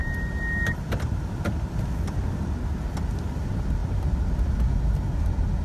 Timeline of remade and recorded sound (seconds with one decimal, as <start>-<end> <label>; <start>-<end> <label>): 0.0-5.6 recorded